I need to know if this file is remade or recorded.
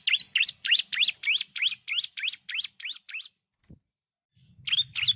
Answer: recorded